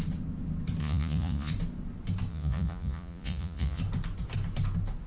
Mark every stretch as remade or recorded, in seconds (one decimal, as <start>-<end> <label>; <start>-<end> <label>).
0.0-0.8 recorded; 0.8-1.5 remade; 1.5-2.3 recorded; 2.3-3.8 remade; 3.8-5.1 recorded